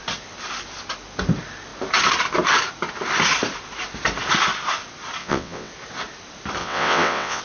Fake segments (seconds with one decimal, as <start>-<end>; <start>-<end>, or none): 5.2-5.7; 6.6-7.4